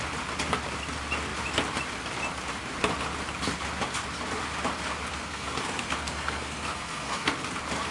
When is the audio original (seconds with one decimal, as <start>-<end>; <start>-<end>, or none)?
0.0-5.1; 7.3-7.9